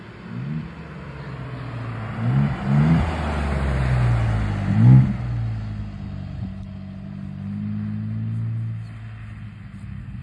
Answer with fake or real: real